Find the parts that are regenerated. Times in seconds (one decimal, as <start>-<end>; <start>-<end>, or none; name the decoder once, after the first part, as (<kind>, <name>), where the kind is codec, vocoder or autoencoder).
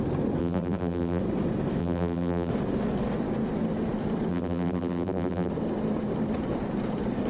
0.4-1.2 (vocoder, BigVGAN v2); 1.8-2.5; 4.3-5.5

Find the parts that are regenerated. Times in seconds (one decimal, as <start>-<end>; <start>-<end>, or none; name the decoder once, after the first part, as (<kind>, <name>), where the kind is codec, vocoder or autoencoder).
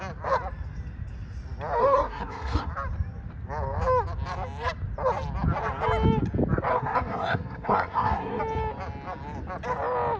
1.8-2.7 (codec, SNAC); 6.7-8.4